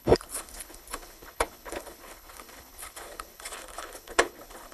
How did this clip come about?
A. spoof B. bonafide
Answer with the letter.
A